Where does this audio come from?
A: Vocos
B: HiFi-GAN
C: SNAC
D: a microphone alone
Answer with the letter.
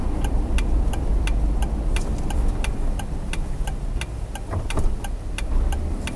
D